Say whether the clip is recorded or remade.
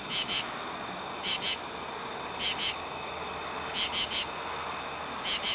recorded